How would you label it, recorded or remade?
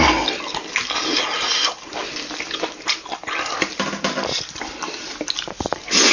recorded